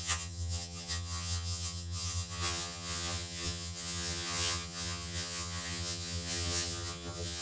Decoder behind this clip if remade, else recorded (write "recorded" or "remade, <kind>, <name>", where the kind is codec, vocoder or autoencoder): remade, vocoder, HiFi-GAN